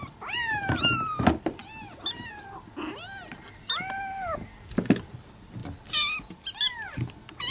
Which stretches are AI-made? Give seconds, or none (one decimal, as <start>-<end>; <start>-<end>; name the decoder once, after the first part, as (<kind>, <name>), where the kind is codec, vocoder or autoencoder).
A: none

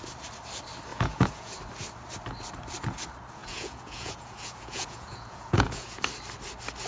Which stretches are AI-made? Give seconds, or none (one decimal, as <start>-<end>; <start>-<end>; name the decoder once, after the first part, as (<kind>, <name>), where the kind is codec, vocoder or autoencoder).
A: 0.9-1.6 (vocoder, Vocos); 3.4-6.0

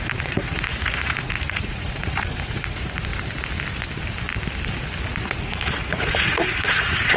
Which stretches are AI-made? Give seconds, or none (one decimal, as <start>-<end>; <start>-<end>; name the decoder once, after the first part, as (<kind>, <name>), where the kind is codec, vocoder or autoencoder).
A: 0.0-3.1 (vocoder, Vocos); 5.2-7.2

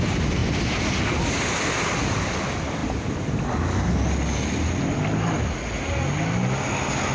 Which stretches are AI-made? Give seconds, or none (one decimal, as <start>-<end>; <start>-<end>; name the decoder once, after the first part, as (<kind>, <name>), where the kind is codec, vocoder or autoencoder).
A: none

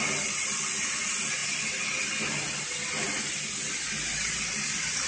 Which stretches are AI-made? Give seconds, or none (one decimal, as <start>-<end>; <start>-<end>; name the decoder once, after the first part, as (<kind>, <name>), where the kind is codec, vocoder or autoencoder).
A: none

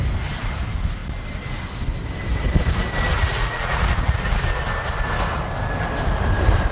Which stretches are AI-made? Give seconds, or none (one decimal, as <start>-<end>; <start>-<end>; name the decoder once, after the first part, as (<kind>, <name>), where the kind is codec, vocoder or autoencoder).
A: 3.1-4.4 (vocoder, Vocos)

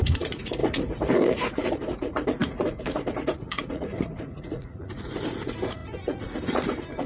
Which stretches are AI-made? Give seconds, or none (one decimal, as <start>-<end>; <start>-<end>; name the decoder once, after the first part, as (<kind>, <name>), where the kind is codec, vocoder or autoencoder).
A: 0.0-7.1 (vocoder, Vocos)